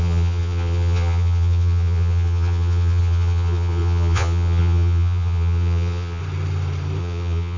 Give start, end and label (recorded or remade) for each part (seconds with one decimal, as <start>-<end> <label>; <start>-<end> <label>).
0.0-6.2 remade; 6.2-7.0 recorded; 7.0-7.6 remade